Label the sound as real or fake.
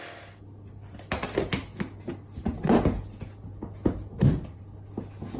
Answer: real